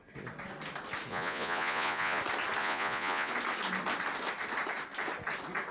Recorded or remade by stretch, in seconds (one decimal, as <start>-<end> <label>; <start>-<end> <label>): 0.0-1.1 recorded; 1.1-2.2 remade; 2.2-2.6 recorded; 2.6-3.3 remade; 3.3-5.7 recorded